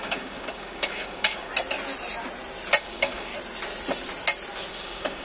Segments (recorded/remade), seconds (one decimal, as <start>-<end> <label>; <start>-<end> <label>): 0.0-1.5 remade; 1.5-2.8 recorded; 2.8-3.3 remade; 3.3-4.7 recorded; 4.7-5.2 remade